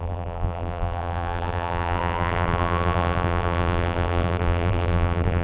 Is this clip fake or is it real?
fake